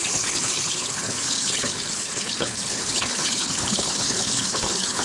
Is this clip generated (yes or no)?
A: yes